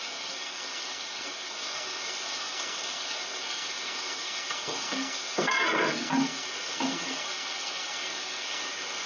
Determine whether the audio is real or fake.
fake